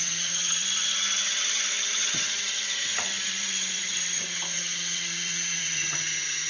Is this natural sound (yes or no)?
no